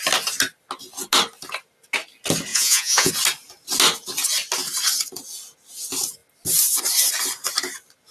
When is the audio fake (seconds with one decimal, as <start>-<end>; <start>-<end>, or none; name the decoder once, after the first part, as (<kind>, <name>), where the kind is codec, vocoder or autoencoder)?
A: 2.5-3.1 (vocoder, Vocos)